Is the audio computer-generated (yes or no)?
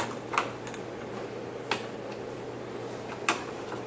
no